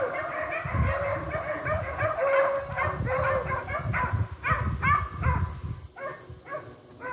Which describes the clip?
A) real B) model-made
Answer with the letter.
A